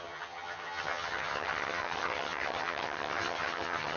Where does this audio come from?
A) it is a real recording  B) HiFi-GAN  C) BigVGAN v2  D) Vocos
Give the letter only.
B